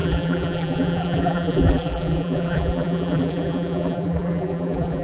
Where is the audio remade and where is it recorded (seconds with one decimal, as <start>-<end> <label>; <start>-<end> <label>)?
0.0-5.0 remade